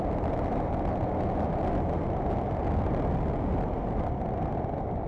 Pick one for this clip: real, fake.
real